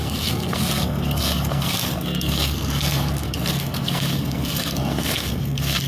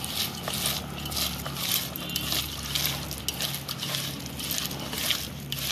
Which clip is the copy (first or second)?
first